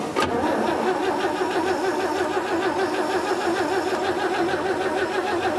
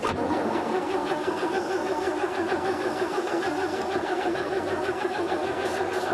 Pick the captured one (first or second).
first